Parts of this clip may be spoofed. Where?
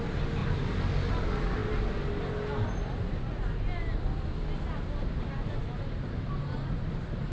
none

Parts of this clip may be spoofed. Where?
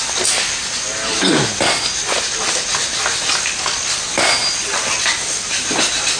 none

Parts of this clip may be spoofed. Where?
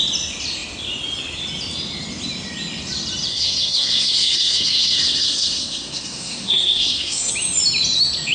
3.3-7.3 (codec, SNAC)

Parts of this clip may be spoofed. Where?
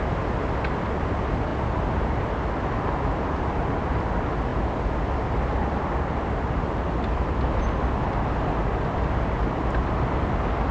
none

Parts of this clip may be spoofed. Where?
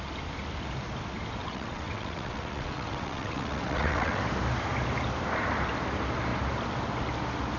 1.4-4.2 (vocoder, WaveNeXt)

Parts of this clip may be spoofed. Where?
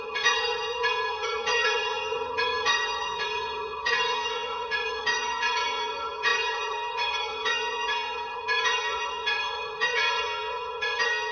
0.0-11.3 (vocoder, Vocos)